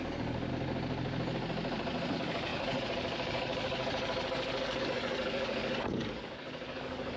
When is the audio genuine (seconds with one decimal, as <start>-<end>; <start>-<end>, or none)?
0.5-2.1